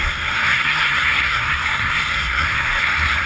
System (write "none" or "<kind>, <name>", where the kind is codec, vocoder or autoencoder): codec, SNAC